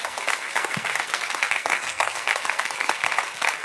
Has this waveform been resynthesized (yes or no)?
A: yes